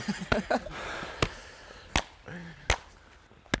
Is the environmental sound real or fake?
real